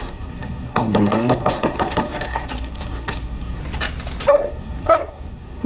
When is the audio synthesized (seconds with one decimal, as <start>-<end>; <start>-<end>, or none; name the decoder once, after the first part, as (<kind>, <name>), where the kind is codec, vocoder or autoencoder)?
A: 0.0-3.6 (codec, SNAC); 4.3-5.7